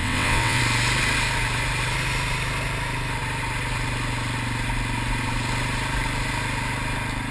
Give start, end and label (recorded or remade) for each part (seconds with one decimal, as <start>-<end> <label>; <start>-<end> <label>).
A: 0.0-0.6 remade; 0.6-7.3 recorded